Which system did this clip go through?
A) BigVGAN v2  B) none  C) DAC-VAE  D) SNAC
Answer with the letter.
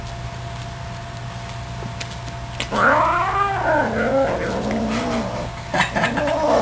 B